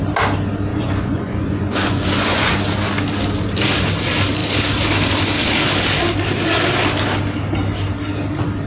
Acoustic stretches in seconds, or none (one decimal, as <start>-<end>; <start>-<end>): 0.0-0.7; 2.6-8.7